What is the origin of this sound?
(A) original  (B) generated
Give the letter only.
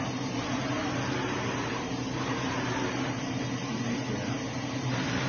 B